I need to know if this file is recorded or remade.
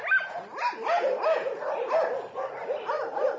recorded